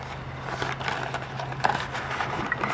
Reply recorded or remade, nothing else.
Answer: recorded